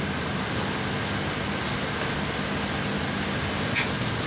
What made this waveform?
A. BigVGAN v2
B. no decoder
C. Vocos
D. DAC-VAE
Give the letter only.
B